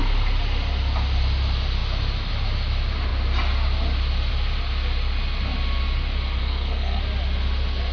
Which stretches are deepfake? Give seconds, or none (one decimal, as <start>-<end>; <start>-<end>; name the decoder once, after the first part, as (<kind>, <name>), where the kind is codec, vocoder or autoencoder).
6.4-7.0 (codec, SNAC)